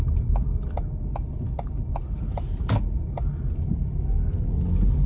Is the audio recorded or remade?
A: recorded